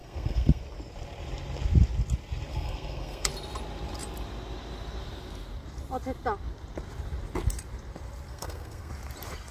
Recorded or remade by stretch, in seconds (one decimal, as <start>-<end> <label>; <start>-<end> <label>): 0.0-0.6 remade; 0.6-2.5 recorded; 2.5-3.3 remade; 3.3-8.3 recorded; 8.3-8.9 remade; 8.9-9.5 recorded